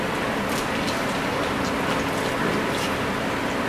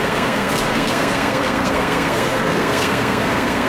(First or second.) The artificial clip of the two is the second